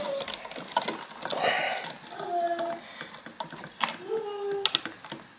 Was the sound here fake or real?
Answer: real